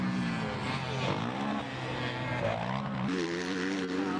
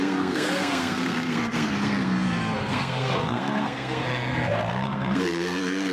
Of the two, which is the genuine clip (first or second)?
first